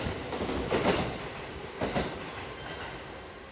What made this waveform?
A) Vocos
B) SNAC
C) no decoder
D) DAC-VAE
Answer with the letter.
C